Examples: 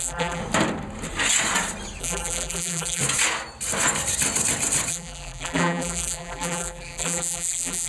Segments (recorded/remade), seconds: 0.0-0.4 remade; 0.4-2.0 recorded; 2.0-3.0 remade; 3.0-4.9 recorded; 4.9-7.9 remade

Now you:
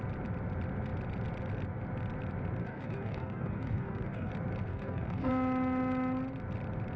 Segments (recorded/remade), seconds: 0.0-2.6 recorded; 2.6-4.3 remade; 4.3-4.7 recorded; 4.7-5.3 remade; 5.3-7.0 recorded

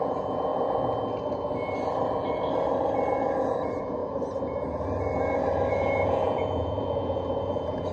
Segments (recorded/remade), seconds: 0.0-0.5 remade; 0.5-3.4 recorded; 3.4-4.0 remade; 4.0-5.7 recorded; 5.7-7.9 remade

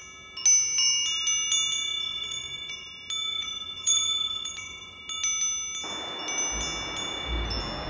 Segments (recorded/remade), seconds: 0.0-2.1 recorded; 2.1-2.9 remade; 2.9-3.3 recorded; 3.3-5.0 remade; 5.0-7.9 recorded

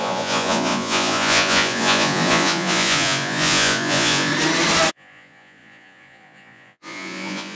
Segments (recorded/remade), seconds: 0.0-4.3 remade; 4.3-4.9 recorded; 4.9-7.6 remade

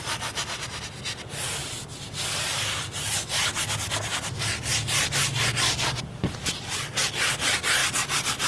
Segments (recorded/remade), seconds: 0.0-4.7 recorded; 4.7-7.3 remade; 7.3-7.8 recorded; 7.8-8.5 remade